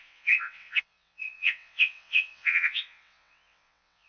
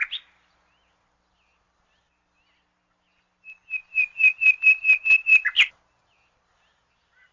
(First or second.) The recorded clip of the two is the second